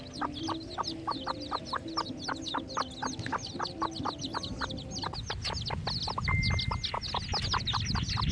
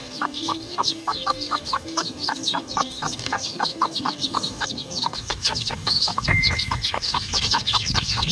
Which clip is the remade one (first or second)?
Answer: second